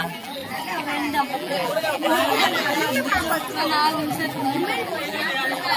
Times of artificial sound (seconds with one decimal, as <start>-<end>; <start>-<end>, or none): 0.0-0.4; 1.2-3.2; 4.1-5.8